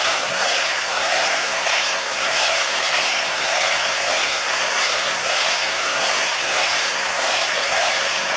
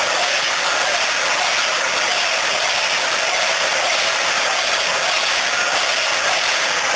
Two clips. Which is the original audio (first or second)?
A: second